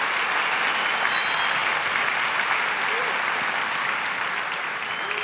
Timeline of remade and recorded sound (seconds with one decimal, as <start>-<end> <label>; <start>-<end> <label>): 0.0-5.2 recorded